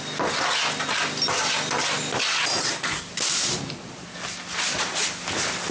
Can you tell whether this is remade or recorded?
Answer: recorded